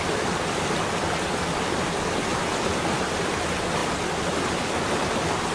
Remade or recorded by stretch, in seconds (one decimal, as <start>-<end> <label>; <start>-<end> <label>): 0.0-5.5 recorded